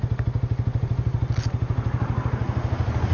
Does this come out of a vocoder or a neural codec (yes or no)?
no